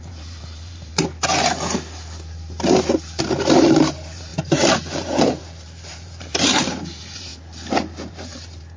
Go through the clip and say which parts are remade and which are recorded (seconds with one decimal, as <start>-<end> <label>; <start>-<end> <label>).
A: 0.0-0.9 remade; 0.9-3.2 recorded; 3.2-7.3 remade; 7.3-8.1 recorded; 8.1-8.8 remade